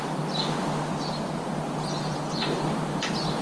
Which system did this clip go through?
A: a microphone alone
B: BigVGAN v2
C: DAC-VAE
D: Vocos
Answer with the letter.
A